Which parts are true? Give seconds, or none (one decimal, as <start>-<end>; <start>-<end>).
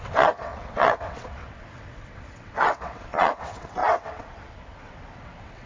none